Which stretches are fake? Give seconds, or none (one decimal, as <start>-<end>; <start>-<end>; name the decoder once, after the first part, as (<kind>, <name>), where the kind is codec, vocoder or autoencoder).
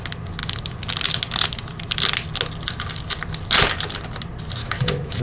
4.6-5.2 (autoencoder, DAC-VAE)